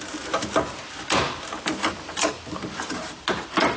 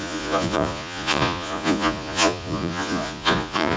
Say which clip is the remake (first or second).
second